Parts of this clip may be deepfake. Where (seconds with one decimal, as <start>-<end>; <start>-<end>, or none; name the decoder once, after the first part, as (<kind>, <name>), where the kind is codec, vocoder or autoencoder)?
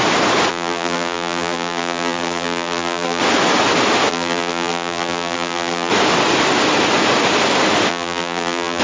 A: 0.5-3.2 (vocoder, BigVGAN v2); 4.1-5.9; 7.9-8.8